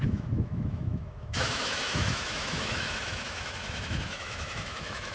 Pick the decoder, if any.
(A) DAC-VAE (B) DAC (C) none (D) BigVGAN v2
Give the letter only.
A